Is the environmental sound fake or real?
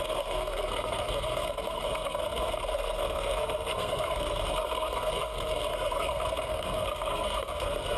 fake